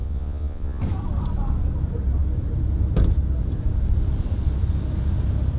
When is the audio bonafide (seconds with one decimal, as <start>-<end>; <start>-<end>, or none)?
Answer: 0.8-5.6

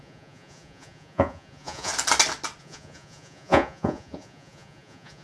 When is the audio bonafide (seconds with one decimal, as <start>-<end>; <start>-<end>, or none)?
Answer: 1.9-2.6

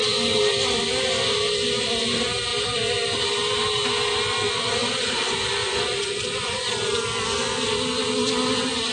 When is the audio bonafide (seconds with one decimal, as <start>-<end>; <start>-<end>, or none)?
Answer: 0.0-5.6; 6.7-8.9